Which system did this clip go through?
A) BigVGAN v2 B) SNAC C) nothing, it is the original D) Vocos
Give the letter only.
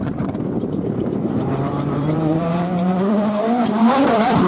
A